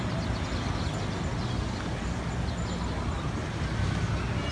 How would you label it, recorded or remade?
recorded